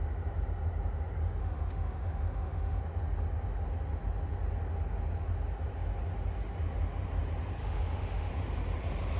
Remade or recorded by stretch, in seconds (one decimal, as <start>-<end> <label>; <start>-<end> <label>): 0.0-1.4 recorded; 1.4-2.8 remade; 2.8-7.6 recorded; 7.6-8.3 remade; 8.3-9.2 recorded